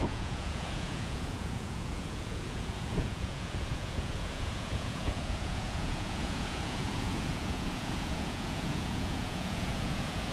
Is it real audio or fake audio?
fake